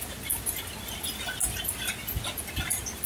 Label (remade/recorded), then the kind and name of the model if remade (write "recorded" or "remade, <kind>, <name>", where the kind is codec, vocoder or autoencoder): recorded